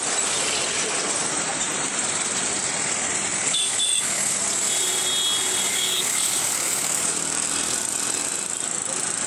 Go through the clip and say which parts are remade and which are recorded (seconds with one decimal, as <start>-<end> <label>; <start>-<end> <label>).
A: 0.0-3.3 recorded; 3.3-4.3 remade; 4.3-5.7 recorded; 5.7-7.5 remade; 7.5-9.3 recorded